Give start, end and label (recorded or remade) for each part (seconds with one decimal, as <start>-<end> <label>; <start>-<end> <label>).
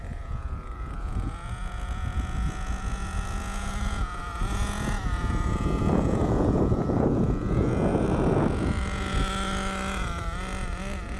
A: 0.0-7.9 remade; 7.9-11.2 recorded